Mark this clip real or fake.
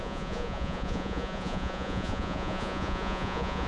fake